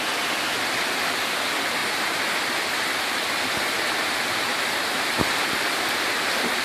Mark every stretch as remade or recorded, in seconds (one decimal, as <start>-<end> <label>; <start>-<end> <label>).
0.0-1.8 recorded; 1.8-5.8 remade; 5.8-6.6 recorded

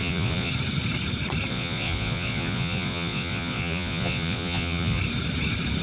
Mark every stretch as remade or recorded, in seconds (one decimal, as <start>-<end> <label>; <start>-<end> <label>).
0.0-0.5 remade; 0.5-1.5 recorded; 1.5-5.0 remade; 5.0-5.8 recorded